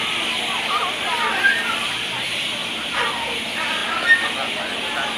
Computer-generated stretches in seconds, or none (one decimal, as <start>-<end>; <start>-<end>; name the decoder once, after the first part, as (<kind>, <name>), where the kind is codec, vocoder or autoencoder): none